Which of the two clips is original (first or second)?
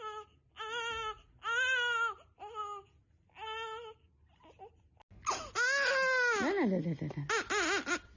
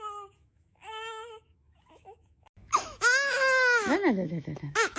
first